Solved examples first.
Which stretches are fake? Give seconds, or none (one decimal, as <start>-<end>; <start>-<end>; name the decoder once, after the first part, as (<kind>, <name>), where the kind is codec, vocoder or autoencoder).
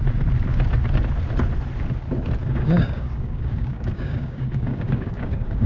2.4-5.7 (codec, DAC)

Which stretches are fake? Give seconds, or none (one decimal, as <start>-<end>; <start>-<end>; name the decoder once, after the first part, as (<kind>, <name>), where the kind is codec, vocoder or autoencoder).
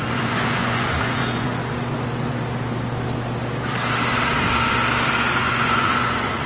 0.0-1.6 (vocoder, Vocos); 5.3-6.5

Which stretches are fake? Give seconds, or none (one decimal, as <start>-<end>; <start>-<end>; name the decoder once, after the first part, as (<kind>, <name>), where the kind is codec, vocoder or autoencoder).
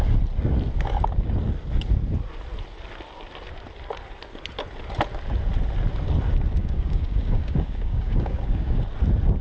6.6-8.8 (codec, DAC)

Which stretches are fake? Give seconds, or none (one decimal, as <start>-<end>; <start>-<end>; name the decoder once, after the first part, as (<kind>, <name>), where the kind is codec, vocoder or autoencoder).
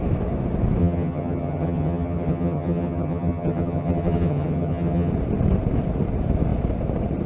0.8-5.1 (vocoder, HiFi-GAN)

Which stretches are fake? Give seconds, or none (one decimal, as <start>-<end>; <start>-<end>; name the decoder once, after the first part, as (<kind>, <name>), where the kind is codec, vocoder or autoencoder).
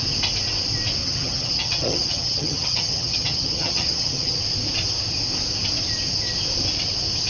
1.0-4.4 (vocoder, HiFi-GAN)